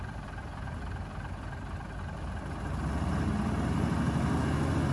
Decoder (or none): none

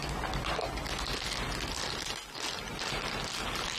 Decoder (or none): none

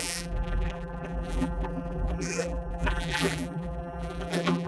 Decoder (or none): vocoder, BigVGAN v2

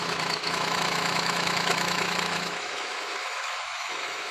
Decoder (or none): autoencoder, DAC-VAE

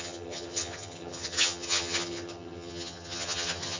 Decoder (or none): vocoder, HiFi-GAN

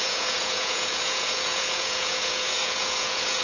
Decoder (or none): vocoder, Vocos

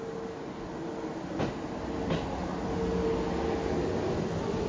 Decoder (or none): none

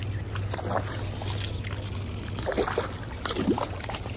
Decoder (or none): none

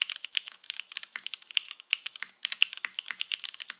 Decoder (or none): autoencoder, DAC-VAE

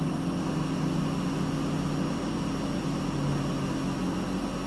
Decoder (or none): none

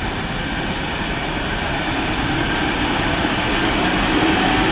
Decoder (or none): none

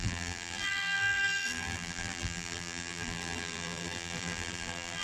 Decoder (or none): vocoder, BigVGAN v2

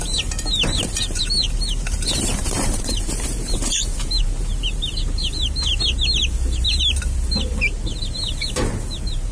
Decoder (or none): vocoder, BigVGAN v2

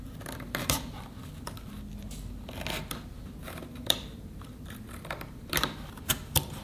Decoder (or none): vocoder, BigVGAN v2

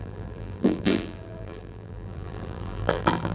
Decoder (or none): vocoder, BigVGAN v2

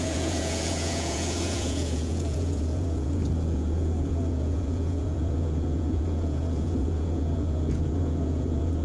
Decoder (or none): vocoder, Vocos